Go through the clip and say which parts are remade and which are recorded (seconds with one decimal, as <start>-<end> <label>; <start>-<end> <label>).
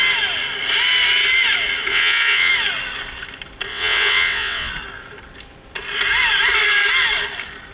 0.0-1.9 recorded; 1.9-2.5 remade; 2.5-3.7 recorded; 3.7-4.7 remade; 4.7-7.7 recorded